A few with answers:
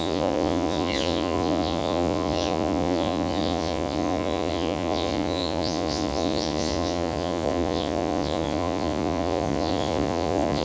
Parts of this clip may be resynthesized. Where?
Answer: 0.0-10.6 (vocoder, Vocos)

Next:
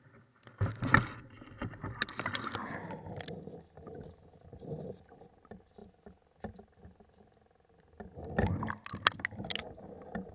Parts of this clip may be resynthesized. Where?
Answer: none

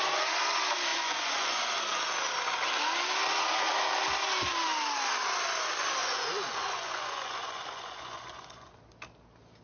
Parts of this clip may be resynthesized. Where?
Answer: 0.9-1.6 (vocoder, Vocos); 6.0-8.7

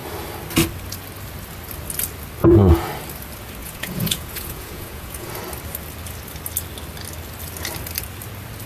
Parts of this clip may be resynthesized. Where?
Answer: 2.4-2.9 (vocoder, Vocos); 3.6-5.3

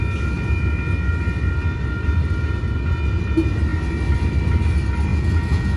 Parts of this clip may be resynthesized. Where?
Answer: 5.1-5.8 (vocoder, Vocos)

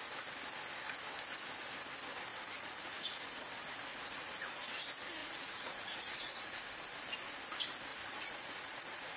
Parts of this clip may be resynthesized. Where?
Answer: 2.3-3.2 (vocoder, Vocos); 3.9-4.7; 5.2-6.7; 7.9-9.2

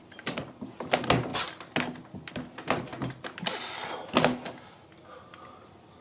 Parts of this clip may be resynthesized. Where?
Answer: none

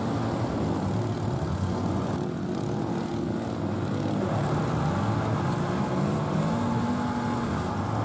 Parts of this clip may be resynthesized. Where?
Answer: 1.5-2.1 (vocoder, Vocos)